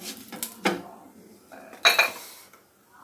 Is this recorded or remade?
recorded